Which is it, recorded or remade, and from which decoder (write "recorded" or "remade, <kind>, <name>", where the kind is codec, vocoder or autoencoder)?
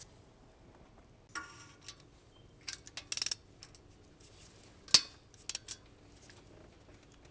recorded